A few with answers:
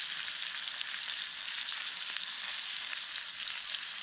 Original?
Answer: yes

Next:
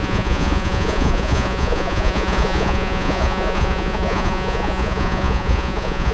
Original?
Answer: no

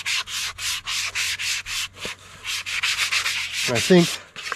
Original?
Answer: yes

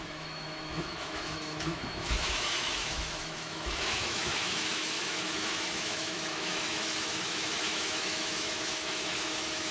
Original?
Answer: no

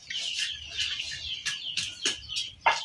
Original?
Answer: yes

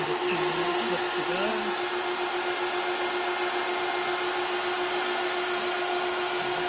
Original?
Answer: yes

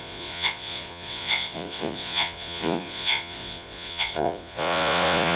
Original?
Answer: no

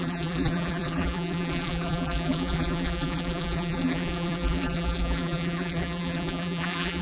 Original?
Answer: no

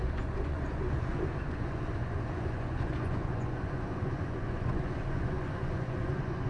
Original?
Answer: no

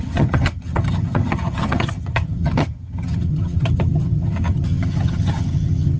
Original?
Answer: no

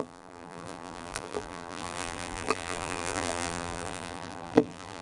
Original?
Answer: no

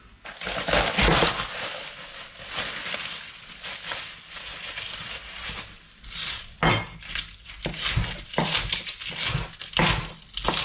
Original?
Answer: yes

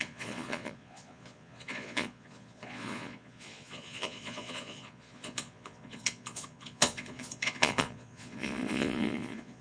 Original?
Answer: no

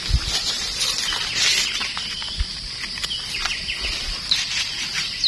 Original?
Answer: yes